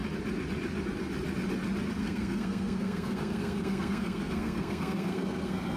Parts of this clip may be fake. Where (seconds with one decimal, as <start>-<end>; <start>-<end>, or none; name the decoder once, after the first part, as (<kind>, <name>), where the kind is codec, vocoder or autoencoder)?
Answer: 2.0-5.8 (codec, SNAC)